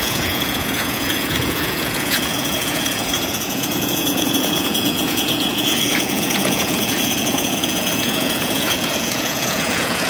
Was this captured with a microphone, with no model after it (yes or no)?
no